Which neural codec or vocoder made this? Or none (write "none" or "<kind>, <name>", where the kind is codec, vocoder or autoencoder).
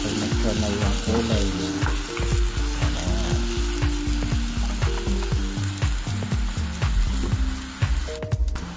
none